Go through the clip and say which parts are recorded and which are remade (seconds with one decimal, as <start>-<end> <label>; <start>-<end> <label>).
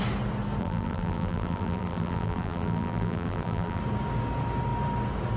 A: 0.0-0.6 recorded; 0.6-3.8 remade; 3.8-5.4 recorded